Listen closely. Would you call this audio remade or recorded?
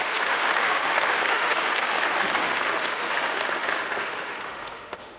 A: remade